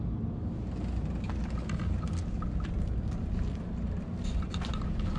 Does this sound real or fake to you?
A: real